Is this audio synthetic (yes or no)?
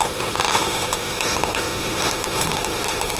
yes